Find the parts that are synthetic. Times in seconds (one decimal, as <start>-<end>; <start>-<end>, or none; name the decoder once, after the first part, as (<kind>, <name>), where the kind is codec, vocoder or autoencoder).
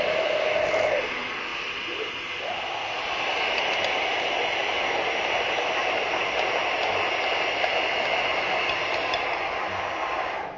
none